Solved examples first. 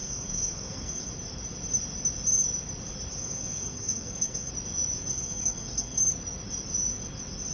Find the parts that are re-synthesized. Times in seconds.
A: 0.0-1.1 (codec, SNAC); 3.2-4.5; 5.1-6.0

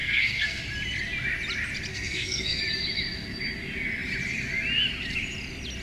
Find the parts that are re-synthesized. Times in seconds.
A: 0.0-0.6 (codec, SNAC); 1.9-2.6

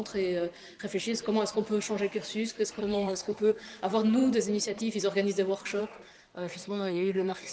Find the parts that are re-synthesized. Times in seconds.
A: 2.8-3.8 (codec, SNAC); 5.8-7.5

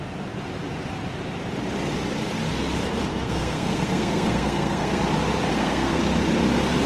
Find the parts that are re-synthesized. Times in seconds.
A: 3.1-5.0 (codec, SNAC); 5.5-6.0